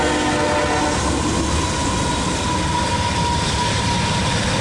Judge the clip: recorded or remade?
recorded